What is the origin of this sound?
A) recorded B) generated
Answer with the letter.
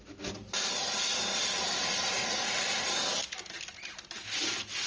A